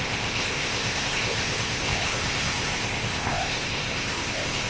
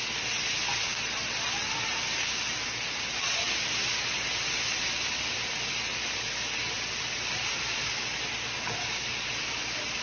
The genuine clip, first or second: second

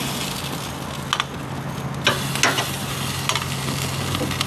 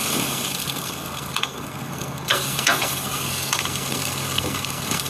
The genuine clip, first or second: first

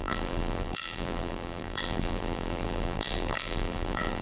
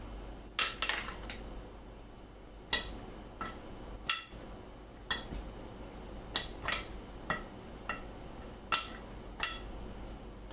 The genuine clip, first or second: second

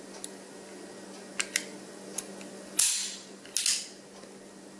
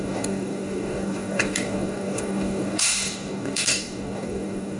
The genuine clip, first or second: first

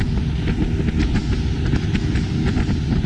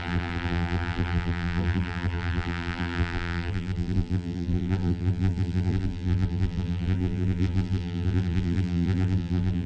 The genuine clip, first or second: first